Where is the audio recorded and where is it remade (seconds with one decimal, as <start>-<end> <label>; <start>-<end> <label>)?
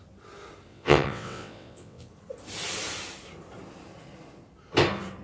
0.0-0.7 recorded; 0.7-2.1 remade; 2.1-5.2 recorded